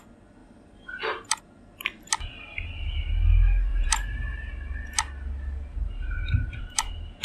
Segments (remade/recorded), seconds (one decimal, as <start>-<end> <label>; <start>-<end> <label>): 0.0-0.4 recorded; 0.4-1.4 remade; 1.4-3.7 recorded; 3.7-4.5 remade; 4.5-5.8 recorded; 5.8-6.6 remade; 6.6-7.2 recorded